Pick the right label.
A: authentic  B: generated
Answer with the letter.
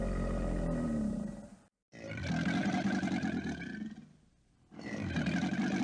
A